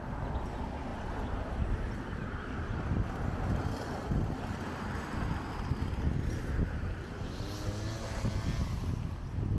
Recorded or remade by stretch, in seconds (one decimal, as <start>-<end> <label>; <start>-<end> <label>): 0.0-9.6 recorded